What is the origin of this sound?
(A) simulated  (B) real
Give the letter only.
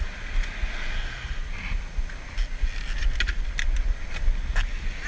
B